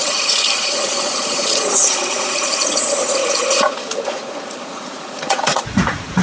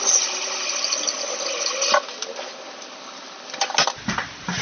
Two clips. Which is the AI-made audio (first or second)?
first